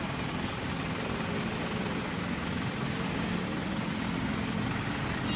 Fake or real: real